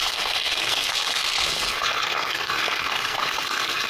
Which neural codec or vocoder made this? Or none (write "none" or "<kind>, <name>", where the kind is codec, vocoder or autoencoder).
codec, SNAC